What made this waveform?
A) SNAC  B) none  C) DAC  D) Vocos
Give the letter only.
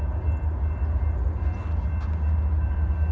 B